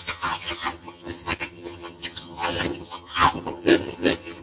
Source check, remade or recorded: remade